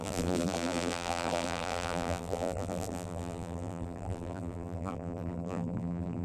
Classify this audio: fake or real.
fake